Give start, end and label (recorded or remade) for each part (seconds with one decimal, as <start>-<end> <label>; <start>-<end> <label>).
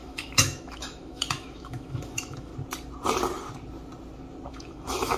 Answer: 0.0-2.5 remade; 2.5-4.5 recorded; 4.5-5.2 remade